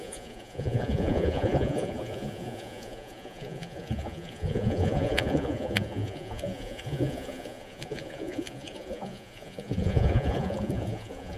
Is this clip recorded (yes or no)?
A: no